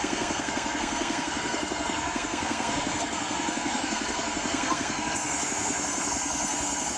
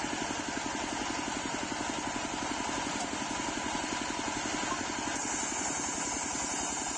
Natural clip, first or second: second